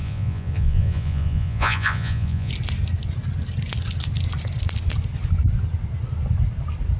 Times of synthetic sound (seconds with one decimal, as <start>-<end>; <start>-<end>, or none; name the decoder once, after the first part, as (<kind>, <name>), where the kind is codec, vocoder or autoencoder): 0.0-2.5 (vocoder, Vocos)

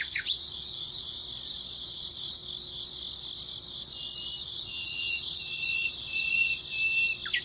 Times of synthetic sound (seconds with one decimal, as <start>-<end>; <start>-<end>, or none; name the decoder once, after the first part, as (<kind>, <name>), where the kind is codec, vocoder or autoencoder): 0.0-1.2 (vocoder, Vocos); 1.8-2.4; 4.4-6.5

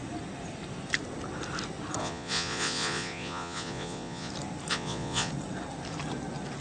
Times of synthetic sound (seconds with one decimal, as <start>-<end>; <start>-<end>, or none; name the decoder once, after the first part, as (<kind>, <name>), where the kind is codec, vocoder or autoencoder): 2.0-4.3 (vocoder, Vocos); 4.7-5.3

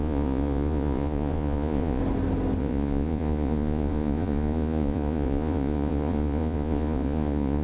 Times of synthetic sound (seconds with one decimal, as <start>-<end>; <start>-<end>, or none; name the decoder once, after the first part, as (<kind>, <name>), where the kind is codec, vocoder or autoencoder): 0.0-2.0 (vocoder, Vocos); 2.6-7.6